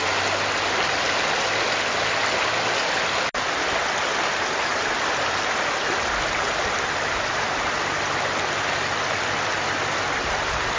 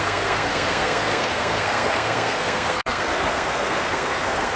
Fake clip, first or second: second